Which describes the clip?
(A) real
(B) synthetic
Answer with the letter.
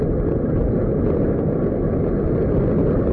A